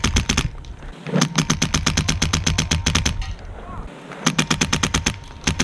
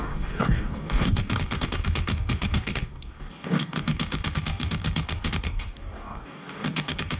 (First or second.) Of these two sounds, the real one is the first